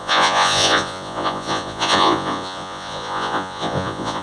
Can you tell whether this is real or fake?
fake